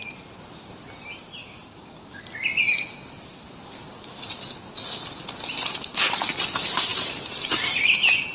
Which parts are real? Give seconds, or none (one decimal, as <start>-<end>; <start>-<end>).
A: 0.0-1.4; 2.2-8.3